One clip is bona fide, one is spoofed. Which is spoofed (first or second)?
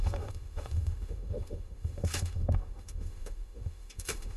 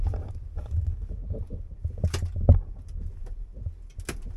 first